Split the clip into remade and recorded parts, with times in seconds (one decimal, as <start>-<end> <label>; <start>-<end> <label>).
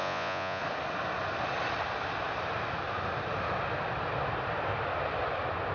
0.0-0.6 remade; 0.6-5.7 recorded